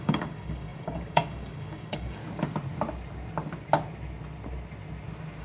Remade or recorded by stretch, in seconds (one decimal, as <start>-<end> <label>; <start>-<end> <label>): 0.0-2.2 remade; 2.2-5.4 recorded